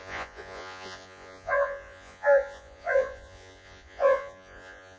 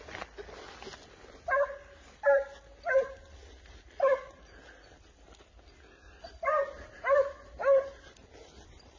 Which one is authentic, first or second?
second